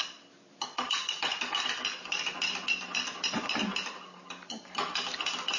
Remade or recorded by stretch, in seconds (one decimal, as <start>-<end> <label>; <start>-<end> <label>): 0.0-5.6 recorded